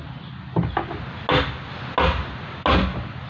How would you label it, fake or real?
real